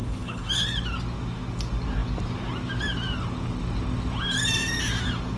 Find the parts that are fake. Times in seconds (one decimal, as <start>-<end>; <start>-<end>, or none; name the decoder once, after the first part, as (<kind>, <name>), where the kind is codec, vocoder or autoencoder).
0.0-0.5 (codec, HILCodec)